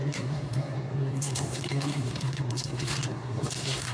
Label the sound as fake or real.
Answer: fake